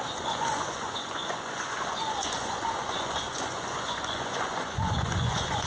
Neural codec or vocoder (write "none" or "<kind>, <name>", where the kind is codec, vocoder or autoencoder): vocoder, Vocos